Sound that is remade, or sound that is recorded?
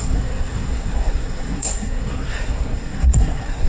remade